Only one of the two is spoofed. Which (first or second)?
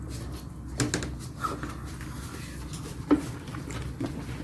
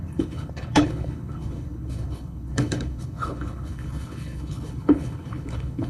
second